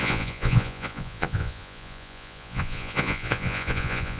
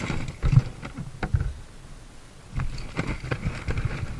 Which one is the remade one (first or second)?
first